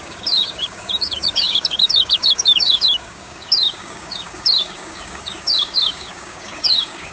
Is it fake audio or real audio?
fake